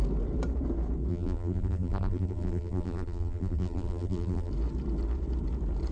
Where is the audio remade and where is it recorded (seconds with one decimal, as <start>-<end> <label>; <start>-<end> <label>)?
0.0-1.1 recorded; 1.1-4.5 remade; 4.5-5.9 recorded